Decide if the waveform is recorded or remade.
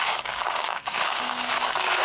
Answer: remade